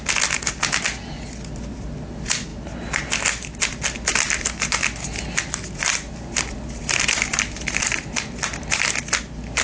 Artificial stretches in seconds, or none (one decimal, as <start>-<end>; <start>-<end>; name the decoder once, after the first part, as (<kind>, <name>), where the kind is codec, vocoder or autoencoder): none